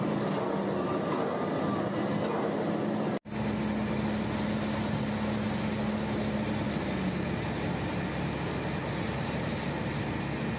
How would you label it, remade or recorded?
recorded